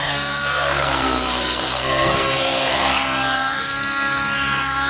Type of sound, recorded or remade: remade